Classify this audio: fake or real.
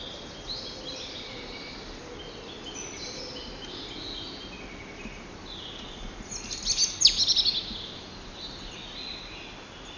real